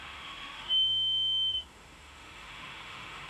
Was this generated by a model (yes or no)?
yes